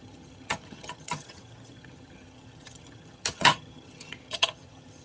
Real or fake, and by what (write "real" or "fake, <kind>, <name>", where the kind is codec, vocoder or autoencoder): fake, vocoder, HiFi-GAN